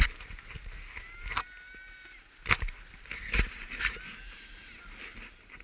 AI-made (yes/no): no